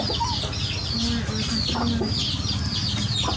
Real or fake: real